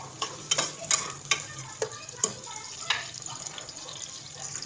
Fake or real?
real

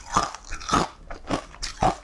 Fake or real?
real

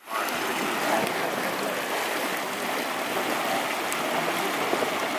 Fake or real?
real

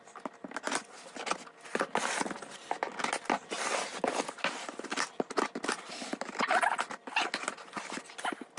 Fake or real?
real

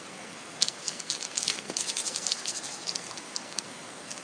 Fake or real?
fake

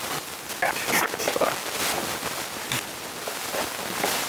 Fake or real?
real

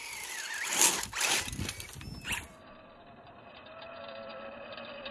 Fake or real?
real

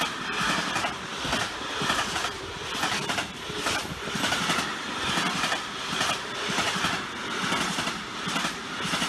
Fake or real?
real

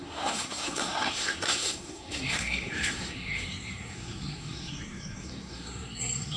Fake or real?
fake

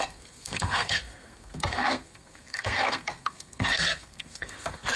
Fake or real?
fake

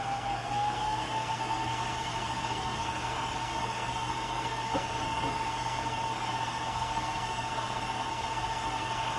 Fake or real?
fake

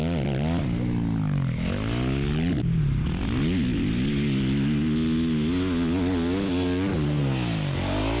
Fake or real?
real